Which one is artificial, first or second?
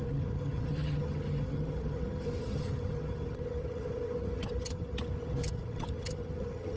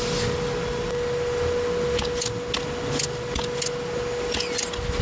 first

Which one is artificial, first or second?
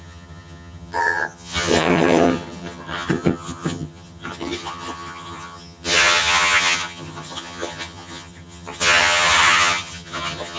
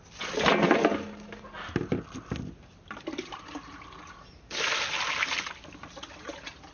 first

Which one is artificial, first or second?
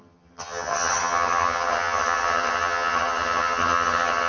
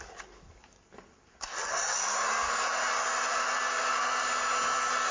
first